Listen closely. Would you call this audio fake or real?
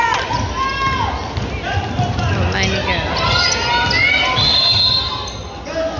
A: real